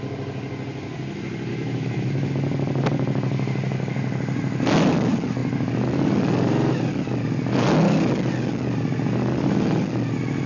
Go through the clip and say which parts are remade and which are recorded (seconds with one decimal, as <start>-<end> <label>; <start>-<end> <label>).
0.0-1.5 recorded; 1.5-2.3 remade; 2.3-10.5 recorded

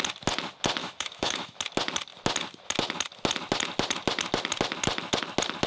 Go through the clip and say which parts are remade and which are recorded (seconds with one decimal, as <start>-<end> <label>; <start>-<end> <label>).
0.0-0.8 recorded; 0.8-1.6 remade; 1.6-5.7 recorded